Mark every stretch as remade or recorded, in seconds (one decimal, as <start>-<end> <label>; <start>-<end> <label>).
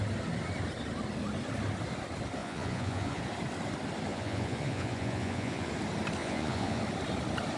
0.0-2.4 recorded; 2.4-3.2 remade; 3.2-4.1 recorded; 4.1-5.7 remade; 5.7-6.2 recorded; 6.2-6.8 remade; 6.8-7.6 recorded